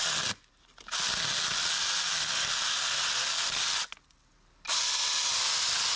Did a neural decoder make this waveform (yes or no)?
no